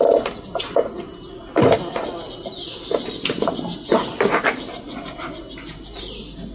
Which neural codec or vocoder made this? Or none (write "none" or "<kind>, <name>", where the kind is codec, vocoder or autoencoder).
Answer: none